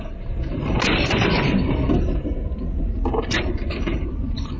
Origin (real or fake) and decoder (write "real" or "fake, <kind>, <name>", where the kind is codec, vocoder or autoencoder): fake, vocoder, BigVGAN v2